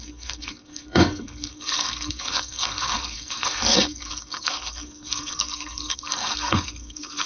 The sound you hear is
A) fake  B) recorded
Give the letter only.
A